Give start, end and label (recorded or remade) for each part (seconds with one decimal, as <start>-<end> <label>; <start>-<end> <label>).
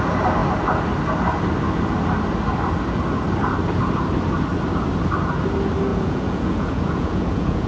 0.0-5.9 recorded; 5.9-7.7 remade